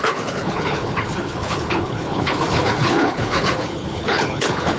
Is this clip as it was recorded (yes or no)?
no